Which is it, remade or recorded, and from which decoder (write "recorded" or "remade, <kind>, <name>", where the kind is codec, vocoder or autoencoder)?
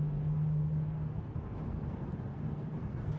remade, codec, SNAC